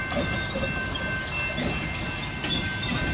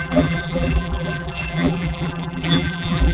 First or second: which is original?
first